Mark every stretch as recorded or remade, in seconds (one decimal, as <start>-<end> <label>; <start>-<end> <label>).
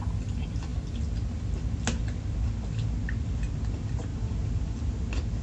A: 0.0-5.4 recorded